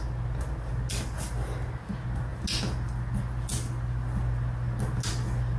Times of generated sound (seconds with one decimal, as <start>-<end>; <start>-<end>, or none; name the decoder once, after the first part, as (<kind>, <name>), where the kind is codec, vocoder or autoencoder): none